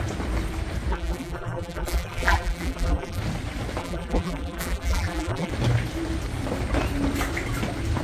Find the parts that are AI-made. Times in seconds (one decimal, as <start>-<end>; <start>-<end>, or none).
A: 0.9-3.2; 3.8-5.5